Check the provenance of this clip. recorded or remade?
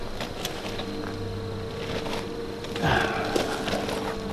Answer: recorded